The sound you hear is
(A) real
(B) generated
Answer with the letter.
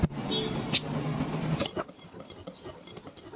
A